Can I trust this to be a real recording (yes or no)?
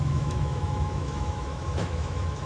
no